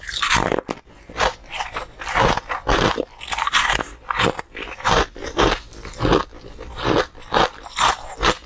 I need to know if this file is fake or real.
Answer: real